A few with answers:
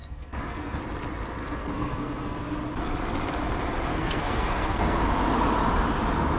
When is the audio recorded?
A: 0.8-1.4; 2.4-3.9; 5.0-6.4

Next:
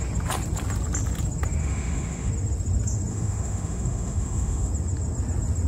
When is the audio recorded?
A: 0.0-1.6; 2.3-3.1; 4.7-5.7

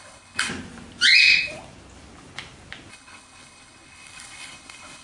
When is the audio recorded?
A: 0.5-2.9